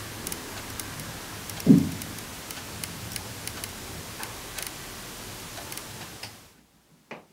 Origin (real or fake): real